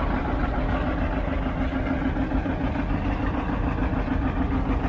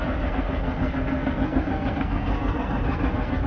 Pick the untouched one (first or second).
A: first